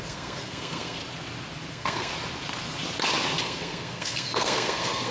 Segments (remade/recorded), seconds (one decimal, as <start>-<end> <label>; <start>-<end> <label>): 0.0-1.0 remade; 1.0-1.7 recorded; 1.7-2.1 remade; 2.1-3.4 recorded; 3.4-5.1 remade